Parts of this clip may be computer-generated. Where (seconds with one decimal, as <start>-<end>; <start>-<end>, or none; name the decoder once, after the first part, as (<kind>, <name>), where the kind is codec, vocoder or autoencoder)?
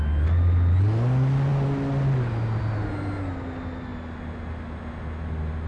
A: none